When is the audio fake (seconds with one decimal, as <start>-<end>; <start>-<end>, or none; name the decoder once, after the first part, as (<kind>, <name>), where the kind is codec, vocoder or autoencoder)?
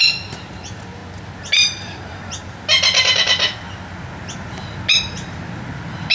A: none